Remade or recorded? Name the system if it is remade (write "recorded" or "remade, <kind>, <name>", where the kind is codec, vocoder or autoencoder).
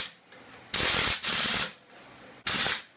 recorded